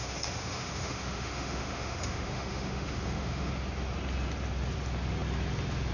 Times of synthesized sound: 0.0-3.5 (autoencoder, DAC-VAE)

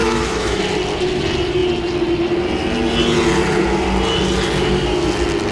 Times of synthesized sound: 0.0-0.6 (autoencoder, DAC-VAE)

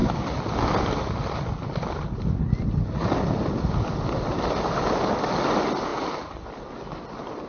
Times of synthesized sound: none

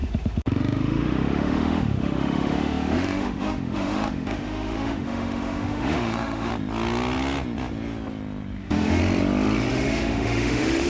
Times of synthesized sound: 0.0-6.5 (autoencoder, DAC-VAE); 8.6-9.0; 9.7-10.9

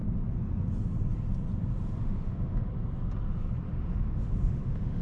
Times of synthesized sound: 2.0-2.7 (autoencoder, DAC-VAE); 3.7-5.0

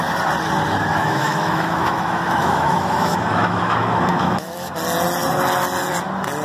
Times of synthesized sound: 1.0-4.7 (autoencoder, DAC-VAE)